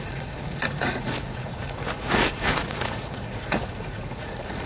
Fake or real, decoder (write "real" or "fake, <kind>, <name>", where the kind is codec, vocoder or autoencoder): fake, vocoder, Vocos